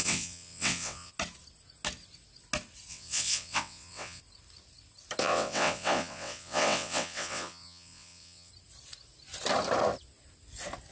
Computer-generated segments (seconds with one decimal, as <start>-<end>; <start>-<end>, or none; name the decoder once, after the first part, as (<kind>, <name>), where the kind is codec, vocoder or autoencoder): 0.0-1.1 (vocoder, WaveNeXt); 2.9-4.2; 5.2-8.5